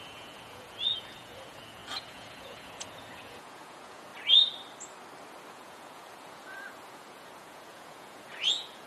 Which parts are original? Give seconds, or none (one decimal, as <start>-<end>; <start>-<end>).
4.1-5.5